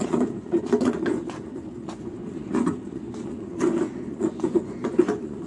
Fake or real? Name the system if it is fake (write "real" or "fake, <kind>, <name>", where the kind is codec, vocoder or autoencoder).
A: fake, vocoder, Vocos